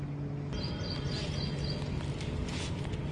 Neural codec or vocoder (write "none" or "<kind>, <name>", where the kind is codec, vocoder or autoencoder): none